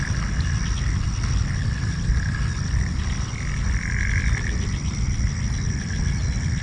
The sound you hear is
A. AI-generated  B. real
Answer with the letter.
B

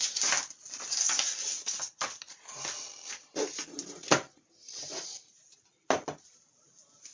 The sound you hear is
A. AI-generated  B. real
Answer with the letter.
B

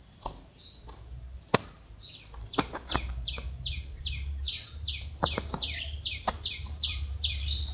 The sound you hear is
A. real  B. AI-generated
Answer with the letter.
B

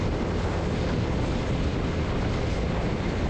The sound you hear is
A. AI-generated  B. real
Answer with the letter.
B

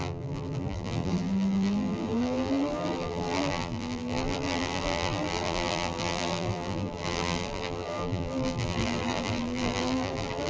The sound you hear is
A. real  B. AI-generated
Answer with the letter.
B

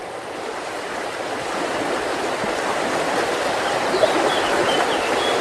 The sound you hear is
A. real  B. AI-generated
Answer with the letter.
A